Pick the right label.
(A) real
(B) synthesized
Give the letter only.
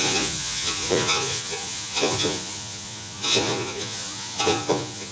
B